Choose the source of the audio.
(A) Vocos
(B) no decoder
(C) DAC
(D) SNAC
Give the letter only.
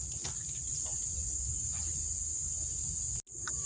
B